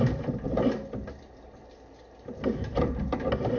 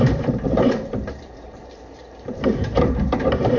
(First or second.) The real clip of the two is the first